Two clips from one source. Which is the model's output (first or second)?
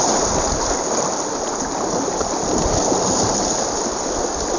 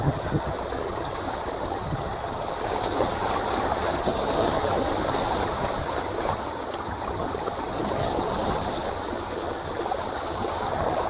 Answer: second